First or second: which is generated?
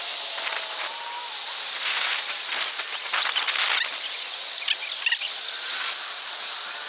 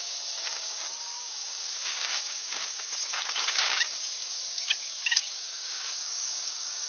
second